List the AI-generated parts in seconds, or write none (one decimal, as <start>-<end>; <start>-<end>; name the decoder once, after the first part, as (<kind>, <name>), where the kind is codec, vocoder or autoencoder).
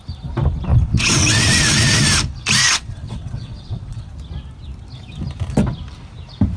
0.7-2.0 (vocoder, WaveNeXt); 2.6-4.1